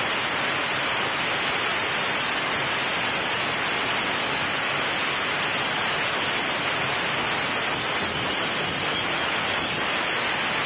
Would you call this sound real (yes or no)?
yes